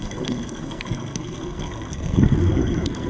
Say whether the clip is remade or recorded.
remade